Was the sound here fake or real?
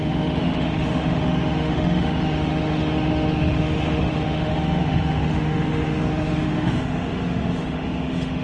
fake